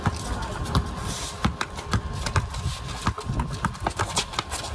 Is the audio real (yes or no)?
yes